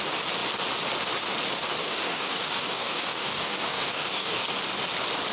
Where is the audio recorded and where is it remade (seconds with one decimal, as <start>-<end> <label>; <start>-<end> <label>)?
0.0-1.8 recorded; 1.8-4.4 remade; 4.4-5.3 recorded